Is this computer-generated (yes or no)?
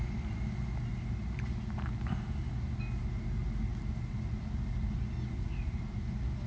no